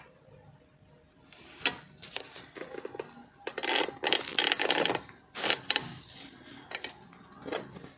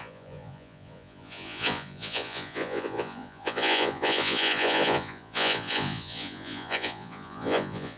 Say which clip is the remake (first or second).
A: second